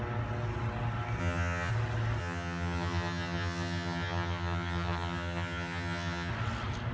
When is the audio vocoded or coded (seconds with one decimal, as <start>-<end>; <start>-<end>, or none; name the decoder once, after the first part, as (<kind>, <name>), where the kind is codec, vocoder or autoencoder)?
1.2-1.7 (vocoder, HiFi-GAN); 2.2-6.3